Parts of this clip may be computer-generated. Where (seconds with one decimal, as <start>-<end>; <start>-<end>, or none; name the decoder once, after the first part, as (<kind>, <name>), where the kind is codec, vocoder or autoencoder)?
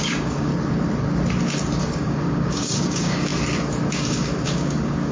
0.0-0.5 (codec, DAC); 1.8-3.3; 3.9-5.1